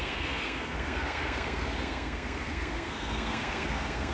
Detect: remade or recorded remade